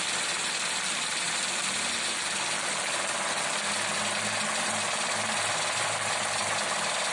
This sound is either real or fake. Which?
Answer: real